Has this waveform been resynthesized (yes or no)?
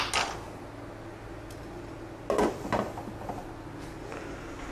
no